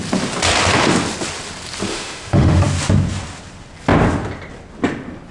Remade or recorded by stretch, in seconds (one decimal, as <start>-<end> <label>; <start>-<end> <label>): 0.0-1.9 recorded; 1.9-2.6 remade; 2.6-5.3 recorded